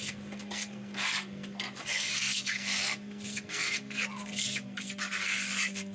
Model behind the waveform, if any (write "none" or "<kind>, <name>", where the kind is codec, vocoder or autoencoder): codec, SNAC